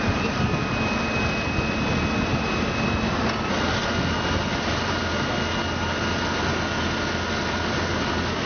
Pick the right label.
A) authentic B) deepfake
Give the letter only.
A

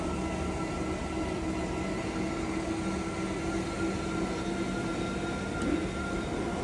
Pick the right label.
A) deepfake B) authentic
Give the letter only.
B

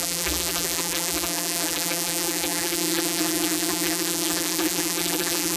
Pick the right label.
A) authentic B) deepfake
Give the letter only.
B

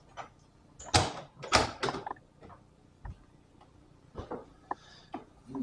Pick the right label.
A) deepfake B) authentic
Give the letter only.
B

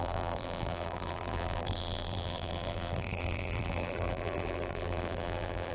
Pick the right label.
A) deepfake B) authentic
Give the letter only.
A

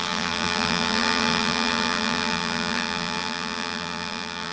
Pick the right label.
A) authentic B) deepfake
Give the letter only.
B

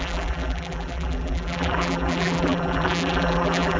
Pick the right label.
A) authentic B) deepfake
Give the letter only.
B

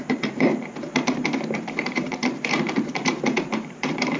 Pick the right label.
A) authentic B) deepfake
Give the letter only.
B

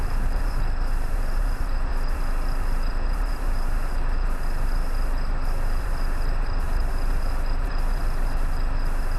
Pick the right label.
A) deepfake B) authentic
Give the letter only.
A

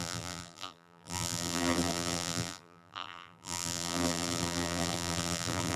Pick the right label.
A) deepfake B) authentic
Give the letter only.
A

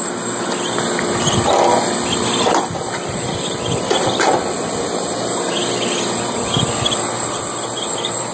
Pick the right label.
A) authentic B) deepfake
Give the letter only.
A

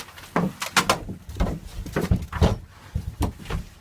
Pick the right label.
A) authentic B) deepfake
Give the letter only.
A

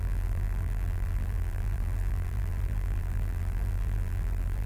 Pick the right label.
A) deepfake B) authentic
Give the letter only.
A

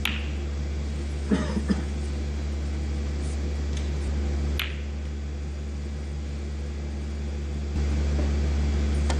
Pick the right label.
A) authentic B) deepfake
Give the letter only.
A